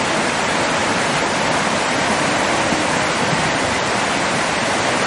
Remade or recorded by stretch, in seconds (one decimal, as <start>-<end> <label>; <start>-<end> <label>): 0.0-0.8 recorded; 0.8-3.9 remade; 3.9-5.1 recorded

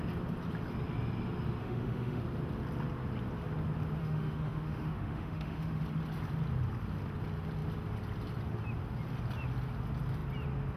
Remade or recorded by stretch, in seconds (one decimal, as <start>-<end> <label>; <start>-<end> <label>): 0.0-1.6 recorded; 1.6-2.2 remade; 2.2-4.0 recorded; 4.0-5.8 remade; 5.8-10.8 recorded